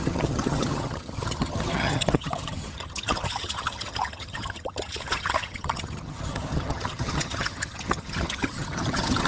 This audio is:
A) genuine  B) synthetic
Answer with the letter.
B